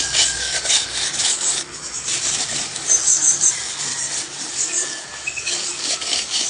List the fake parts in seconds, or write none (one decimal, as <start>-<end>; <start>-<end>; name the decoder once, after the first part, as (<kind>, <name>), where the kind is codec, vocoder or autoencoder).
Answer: 0.0-3.9 (codec, DAC); 4.5-6.5